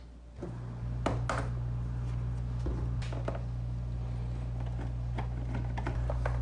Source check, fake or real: real